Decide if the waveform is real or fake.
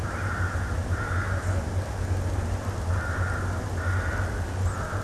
real